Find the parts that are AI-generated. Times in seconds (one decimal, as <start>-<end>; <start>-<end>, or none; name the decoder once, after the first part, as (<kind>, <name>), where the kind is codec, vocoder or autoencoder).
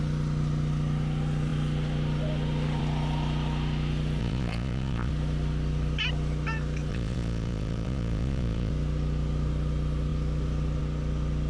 4.2-5.1 (vocoder, Vocos); 6.9-8.7